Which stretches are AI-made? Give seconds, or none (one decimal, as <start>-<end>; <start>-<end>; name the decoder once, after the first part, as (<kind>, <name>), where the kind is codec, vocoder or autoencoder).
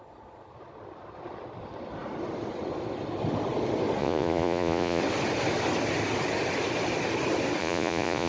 4.0-5.0 (vocoder, Vocos); 7.6-8.3